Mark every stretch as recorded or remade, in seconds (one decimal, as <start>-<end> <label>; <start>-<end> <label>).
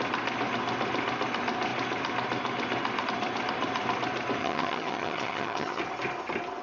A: 0.0-4.4 recorded; 4.4-5.8 remade; 5.8-6.6 recorded